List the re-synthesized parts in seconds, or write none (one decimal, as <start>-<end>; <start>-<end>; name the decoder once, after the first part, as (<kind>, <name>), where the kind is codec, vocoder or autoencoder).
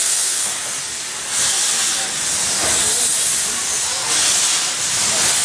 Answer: 0.0-0.5 (codec, SNAC)